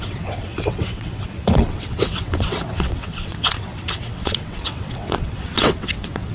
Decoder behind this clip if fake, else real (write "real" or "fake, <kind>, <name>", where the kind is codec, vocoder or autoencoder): fake, vocoder, WaveNeXt